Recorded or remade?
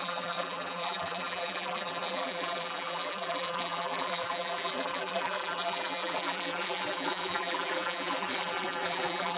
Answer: remade